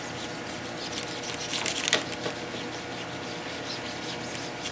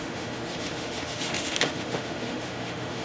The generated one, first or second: second